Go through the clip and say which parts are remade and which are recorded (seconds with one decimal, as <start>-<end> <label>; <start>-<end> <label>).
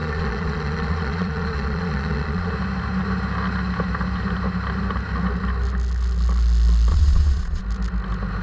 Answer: 0.0-2.5 remade; 2.5-6.9 recorded; 6.9-7.6 remade; 7.6-8.4 recorded